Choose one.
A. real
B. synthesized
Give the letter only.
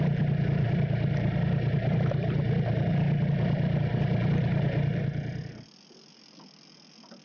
A